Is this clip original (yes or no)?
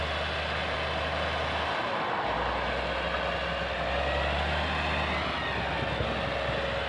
yes